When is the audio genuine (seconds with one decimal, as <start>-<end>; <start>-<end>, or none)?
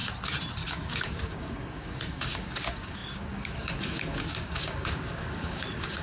0.0-0.7